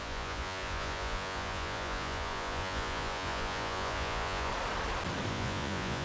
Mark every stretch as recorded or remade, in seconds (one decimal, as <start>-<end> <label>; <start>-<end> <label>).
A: 0.0-4.5 remade; 4.5-5.3 recorded; 5.3-6.0 remade